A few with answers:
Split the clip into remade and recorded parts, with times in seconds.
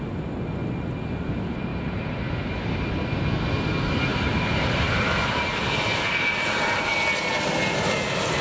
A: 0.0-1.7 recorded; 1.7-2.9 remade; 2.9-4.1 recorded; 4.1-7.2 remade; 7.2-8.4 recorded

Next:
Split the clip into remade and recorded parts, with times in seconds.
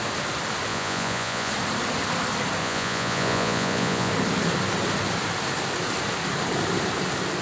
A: 0.0-0.7 recorded; 0.7-1.5 remade; 1.5-2.6 recorded; 2.6-4.1 remade; 4.1-7.4 recorded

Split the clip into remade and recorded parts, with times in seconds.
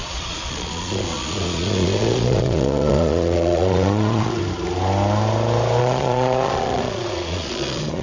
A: 0.0-4.4 remade; 4.4-5.8 recorded; 5.8-8.0 remade